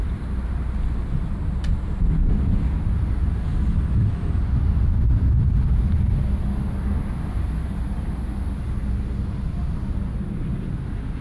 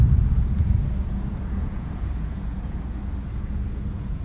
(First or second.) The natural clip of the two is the first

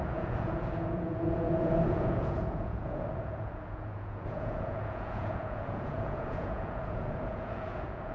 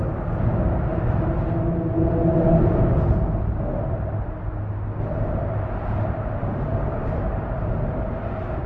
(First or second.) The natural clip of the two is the second